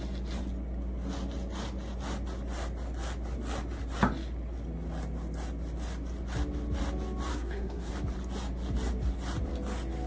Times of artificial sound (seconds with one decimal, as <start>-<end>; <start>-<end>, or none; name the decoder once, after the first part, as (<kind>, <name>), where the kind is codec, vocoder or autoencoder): 7.3-7.9 (codec, SNAC)